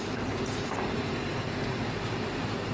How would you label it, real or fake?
fake